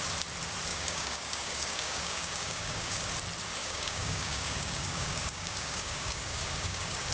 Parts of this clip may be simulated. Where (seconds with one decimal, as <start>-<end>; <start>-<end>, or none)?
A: 0.7-3.0; 3.6-7.1